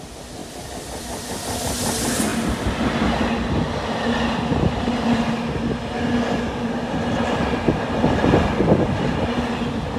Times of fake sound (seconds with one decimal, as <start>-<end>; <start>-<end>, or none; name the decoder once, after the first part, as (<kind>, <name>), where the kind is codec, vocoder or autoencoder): 0.4-1.6 (vocoder, BigVGAN v2)

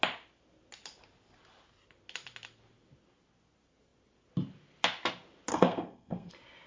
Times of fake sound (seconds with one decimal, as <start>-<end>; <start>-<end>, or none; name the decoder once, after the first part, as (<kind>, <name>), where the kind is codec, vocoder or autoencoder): 5.5-6.3 (codec, SNAC)

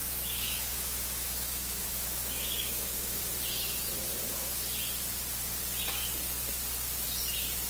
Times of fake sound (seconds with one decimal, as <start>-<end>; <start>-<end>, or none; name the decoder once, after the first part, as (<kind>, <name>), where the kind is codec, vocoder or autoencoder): 0.0-3.2 (autoencoder, DAC-VAE)

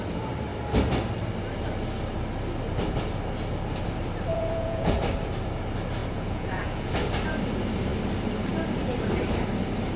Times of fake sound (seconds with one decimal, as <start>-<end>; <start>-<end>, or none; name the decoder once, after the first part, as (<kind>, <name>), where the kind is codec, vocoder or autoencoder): 4.3-5.0 (vocoder, Vocos); 6.0-6.9